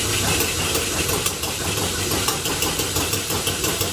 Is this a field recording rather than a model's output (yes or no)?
no